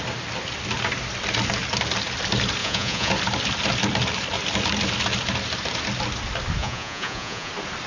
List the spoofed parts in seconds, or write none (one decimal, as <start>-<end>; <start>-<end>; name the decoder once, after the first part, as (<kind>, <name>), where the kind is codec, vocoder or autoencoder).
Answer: 2.6-3.1 (vocoder, Vocos); 6.6-7.5

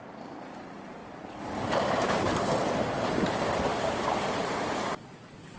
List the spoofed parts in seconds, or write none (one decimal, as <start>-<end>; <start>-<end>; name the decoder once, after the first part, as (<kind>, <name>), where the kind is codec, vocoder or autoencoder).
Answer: 0.0-5.6 (vocoder, BigVGAN v2)

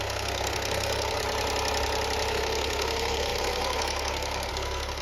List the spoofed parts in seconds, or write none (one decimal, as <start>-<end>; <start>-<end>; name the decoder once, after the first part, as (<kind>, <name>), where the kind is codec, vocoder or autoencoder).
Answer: 0.0-1.2 (codec, SNAC); 2.3-5.0

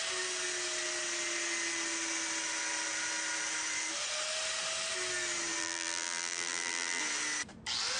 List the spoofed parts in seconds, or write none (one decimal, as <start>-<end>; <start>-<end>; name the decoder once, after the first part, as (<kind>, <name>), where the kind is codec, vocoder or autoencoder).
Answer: 5.6-7.0 (vocoder, BigVGAN v2)